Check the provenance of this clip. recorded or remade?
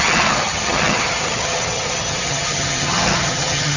remade